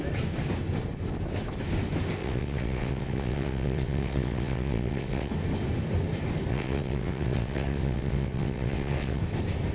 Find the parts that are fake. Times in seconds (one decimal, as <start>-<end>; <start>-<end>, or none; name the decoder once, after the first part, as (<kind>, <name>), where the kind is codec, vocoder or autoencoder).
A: 2.2-5.3 (vocoder, WaveNeXt); 6.5-9.2